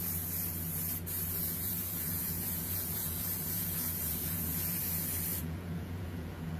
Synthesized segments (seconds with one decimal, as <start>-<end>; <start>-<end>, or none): 1.4-4.8; 5.3-6.6